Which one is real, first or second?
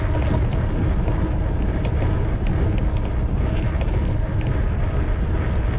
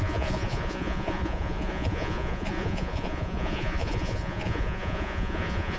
first